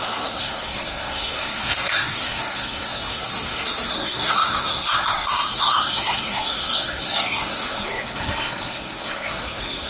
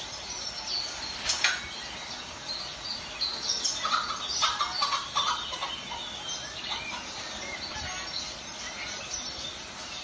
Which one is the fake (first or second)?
first